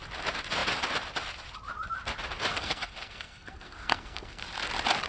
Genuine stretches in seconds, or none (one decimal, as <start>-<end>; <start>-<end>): 0.0-2.5; 4.4-5.1